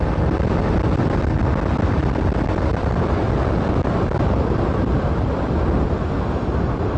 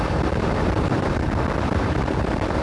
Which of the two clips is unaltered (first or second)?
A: first